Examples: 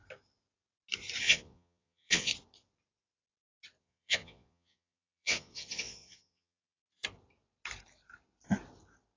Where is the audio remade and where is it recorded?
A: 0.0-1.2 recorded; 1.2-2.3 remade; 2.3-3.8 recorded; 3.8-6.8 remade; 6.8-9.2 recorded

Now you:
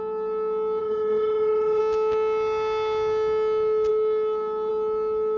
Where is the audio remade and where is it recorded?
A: 0.0-0.8 recorded; 0.8-1.8 remade; 1.8-5.4 recorded

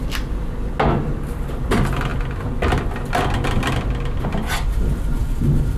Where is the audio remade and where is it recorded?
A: 0.0-5.8 recorded

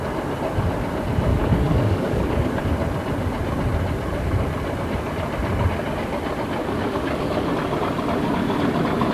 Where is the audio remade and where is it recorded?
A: 0.0-1.3 recorded; 1.3-2.6 remade; 2.6-6.6 recorded; 6.6-7.5 remade; 7.5-9.1 recorded

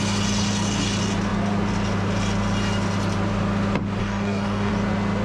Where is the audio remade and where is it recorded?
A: 0.0-4.0 recorded; 4.0-4.7 remade; 4.7-5.2 recorded

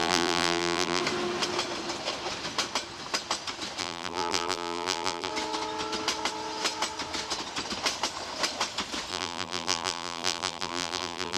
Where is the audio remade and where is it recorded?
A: 0.0-1.0 remade; 1.0-3.8 recorded; 3.8-5.3 remade; 5.3-9.1 recorded; 9.1-11.4 remade

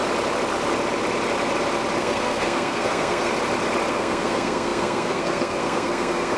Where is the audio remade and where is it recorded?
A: 0.0-2.0 recorded; 2.0-3.3 remade; 3.3-3.9 recorded; 3.9-6.4 remade

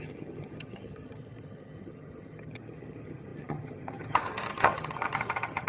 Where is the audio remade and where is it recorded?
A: 0.0-5.7 remade